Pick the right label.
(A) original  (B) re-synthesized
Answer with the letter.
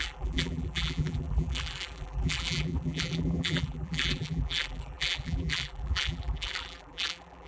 B